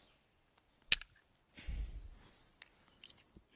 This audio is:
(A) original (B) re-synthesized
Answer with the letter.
A